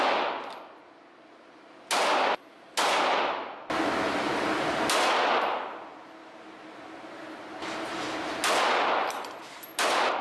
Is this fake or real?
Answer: real